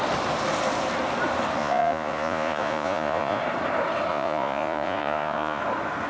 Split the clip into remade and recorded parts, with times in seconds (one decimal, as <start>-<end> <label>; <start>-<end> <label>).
0.0-1.6 recorded; 1.6-3.4 remade; 3.4-4.1 recorded; 4.1-5.6 remade; 5.6-6.1 recorded